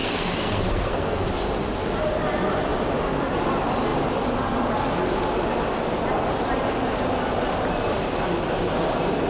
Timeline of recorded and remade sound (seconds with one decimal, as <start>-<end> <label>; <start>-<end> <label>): 0.0-1.3 remade; 1.3-9.3 recorded